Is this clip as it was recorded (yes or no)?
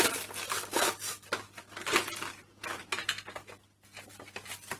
yes